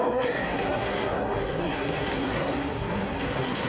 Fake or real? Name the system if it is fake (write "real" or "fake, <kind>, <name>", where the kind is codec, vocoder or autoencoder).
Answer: fake, codec, SNAC